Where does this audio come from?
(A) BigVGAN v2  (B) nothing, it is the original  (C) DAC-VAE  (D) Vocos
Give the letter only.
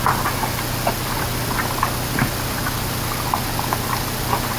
B